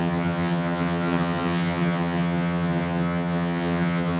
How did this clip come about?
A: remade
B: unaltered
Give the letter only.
A